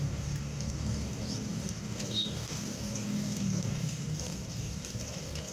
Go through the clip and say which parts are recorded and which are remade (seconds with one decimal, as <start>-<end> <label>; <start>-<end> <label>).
0.0-5.5 remade